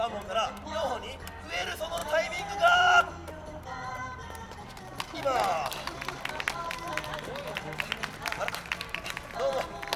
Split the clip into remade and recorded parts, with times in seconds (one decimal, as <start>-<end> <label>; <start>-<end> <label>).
0.0-10.0 recorded